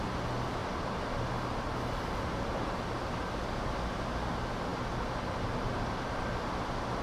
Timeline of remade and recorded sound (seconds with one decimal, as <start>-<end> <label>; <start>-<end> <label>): 0.0-7.0 recorded